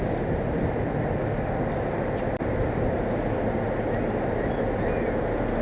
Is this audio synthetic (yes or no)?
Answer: no